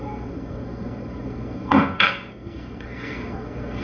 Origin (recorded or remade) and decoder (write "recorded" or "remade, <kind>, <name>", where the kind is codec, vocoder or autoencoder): remade, codec, SNAC